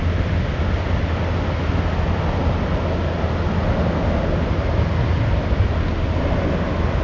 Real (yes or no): yes